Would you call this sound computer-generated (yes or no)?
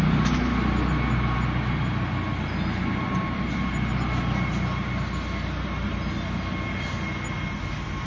no